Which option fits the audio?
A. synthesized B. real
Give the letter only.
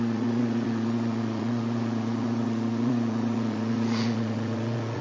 A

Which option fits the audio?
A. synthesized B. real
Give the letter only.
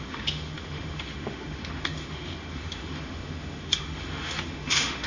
A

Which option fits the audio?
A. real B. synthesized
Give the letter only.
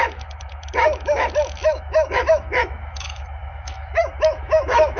B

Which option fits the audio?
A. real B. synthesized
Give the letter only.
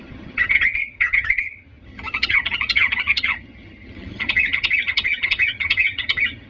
B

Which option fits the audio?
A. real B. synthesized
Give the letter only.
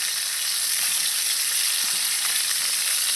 A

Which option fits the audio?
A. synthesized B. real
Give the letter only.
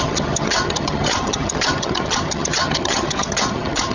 A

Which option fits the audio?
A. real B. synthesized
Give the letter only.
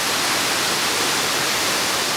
A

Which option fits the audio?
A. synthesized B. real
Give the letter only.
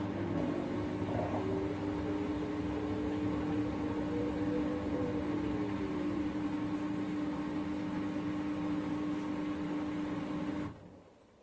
B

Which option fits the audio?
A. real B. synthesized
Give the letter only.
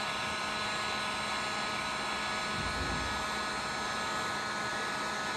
A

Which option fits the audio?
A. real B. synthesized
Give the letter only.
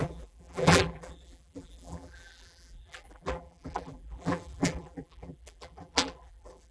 B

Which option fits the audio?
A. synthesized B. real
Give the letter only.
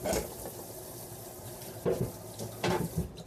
B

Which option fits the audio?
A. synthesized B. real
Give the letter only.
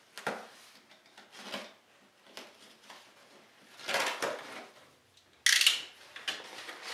B